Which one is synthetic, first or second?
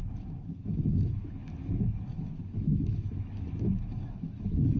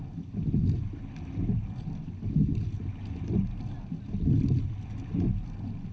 first